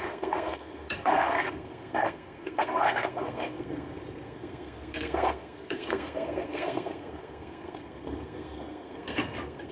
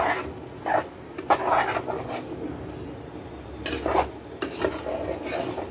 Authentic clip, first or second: second